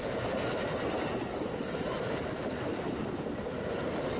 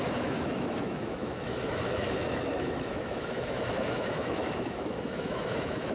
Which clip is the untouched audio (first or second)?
first